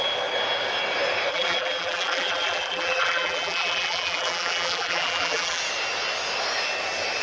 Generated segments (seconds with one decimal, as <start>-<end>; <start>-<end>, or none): 1.3-5.6